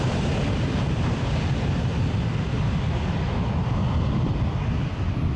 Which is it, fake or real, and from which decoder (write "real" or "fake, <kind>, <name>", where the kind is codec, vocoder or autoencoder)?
real